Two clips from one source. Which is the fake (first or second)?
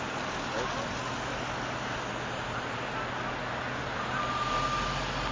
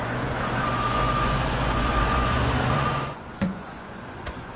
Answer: second